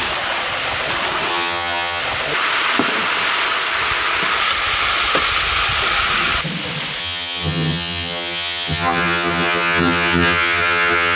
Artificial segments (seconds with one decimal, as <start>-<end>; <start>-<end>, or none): 1.3-2.0; 7.0-11.2